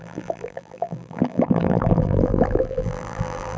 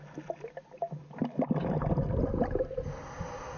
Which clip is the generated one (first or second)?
first